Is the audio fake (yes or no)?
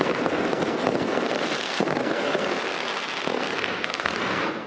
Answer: yes